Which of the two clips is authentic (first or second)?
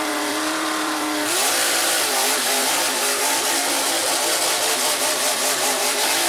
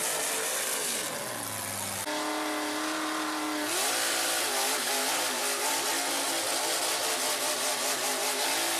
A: second